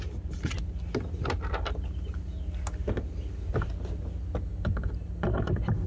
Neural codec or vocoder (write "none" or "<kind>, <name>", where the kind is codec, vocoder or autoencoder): none